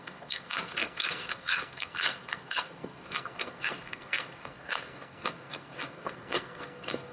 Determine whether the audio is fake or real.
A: fake